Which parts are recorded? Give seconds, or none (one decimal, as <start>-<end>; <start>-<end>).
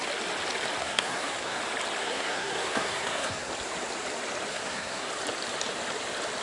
0.0-0.8; 1.6-2.0; 3.5-4.5; 5.1-6.4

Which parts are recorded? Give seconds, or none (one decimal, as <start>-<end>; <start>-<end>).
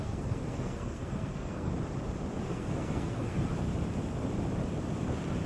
1.7-2.4; 3.5-5.5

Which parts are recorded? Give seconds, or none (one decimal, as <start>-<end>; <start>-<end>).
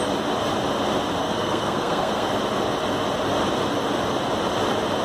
0.0-1.2; 2.4-5.0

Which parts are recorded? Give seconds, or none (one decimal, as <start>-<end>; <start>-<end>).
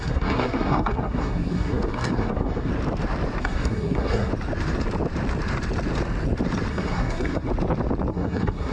2.7-3.4; 4.3-6.7; 7.5-8.1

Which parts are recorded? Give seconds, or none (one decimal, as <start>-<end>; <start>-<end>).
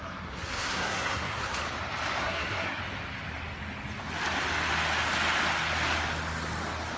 1.6-2.2; 2.8-7.0